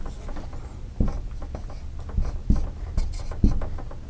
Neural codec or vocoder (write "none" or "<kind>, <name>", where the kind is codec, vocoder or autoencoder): none